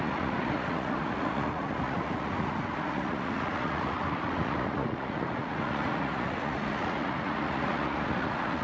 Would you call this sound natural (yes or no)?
no